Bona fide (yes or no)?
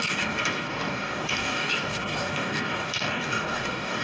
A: no